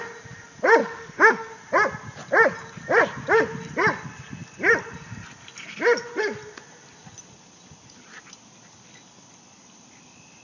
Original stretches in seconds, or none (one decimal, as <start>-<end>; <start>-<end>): 0.0-0.8; 1.5-10.4